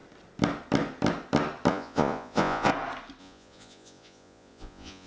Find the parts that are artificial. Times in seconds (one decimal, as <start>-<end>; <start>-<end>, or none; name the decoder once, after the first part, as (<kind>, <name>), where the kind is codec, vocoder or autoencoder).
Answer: 1.7-2.7 (vocoder, Vocos); 3.2-5.1